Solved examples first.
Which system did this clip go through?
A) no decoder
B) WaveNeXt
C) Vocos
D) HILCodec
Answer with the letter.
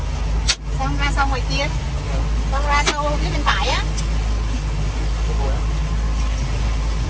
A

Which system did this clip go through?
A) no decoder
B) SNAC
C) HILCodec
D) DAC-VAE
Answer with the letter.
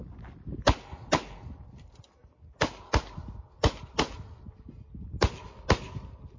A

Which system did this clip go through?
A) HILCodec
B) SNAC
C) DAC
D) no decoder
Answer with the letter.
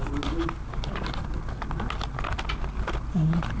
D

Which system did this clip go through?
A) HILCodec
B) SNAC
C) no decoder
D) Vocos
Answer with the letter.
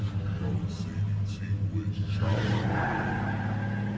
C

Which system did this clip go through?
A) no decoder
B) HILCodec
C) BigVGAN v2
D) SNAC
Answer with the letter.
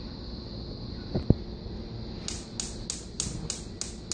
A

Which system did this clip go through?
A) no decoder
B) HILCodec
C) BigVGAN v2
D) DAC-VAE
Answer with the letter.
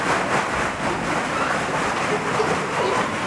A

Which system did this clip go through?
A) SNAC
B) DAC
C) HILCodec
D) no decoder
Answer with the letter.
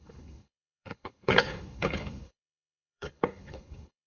C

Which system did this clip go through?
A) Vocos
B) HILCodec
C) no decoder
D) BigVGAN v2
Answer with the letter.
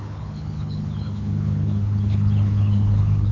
B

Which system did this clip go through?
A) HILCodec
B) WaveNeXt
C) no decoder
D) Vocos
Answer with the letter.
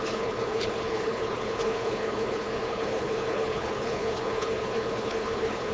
A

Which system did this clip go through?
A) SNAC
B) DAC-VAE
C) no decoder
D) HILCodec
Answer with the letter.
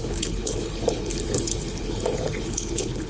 D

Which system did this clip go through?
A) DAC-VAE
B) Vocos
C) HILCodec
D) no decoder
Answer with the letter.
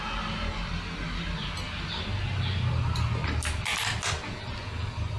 D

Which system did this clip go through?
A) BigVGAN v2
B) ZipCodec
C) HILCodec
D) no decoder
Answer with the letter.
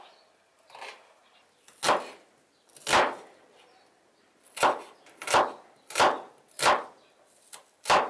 D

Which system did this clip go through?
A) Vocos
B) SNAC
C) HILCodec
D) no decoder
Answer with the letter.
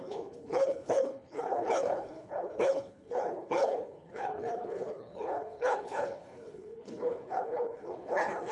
C